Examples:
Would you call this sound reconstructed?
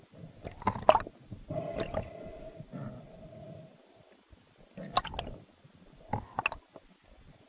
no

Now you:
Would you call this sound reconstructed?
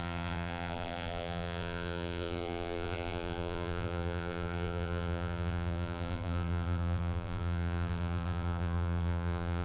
yes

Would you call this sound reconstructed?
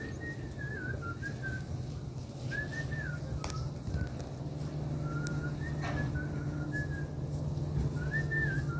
no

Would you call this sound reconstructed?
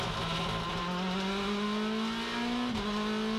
no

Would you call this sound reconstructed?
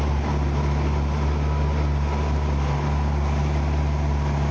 no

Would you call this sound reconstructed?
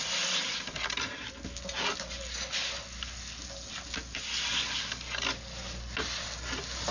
no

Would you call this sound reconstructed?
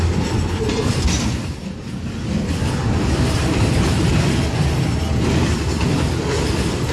no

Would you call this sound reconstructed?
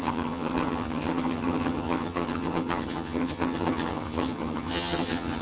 yes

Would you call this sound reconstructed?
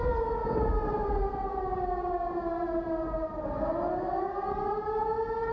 no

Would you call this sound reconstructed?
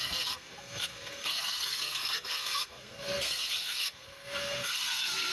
yes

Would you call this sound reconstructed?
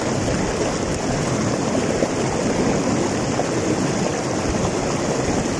no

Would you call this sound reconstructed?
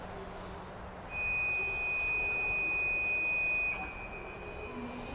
no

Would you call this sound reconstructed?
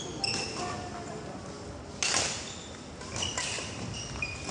no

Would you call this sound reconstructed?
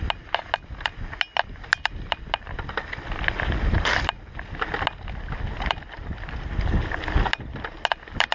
no